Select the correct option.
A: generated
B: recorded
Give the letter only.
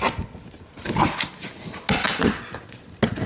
B